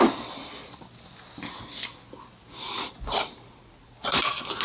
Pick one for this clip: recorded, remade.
recorded